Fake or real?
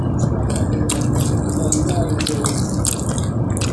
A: real